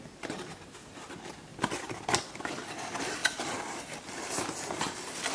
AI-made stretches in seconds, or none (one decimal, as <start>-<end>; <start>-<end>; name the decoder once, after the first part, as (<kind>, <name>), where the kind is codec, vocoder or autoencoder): 3.2-4.2 (vocoder, BigVGAN v2)